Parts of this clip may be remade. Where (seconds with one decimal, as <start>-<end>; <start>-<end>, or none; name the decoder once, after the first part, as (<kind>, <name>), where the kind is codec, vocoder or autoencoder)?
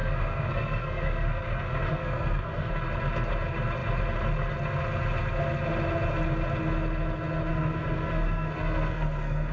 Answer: 0.0-2.7 (codec, SNAC); 7.5-9.5